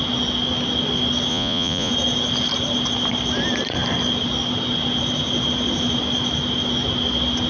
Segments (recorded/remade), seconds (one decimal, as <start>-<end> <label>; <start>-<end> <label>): 0.0-1.3 recorded; 1.3-1.9 remade; 1.9-7.5 recorded